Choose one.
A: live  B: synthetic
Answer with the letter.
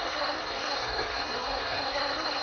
B